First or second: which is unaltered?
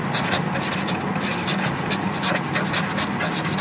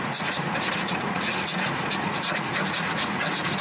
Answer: first